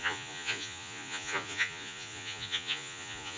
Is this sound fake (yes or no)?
yes